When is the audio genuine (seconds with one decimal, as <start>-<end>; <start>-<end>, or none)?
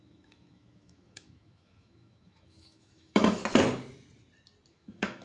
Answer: 3.4-4.7